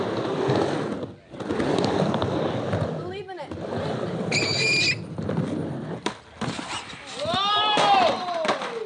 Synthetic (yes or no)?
no